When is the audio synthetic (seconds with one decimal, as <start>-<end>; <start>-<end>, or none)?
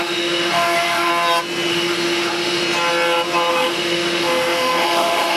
0.0-1.1; 1.7-2.6; 3.5-5.4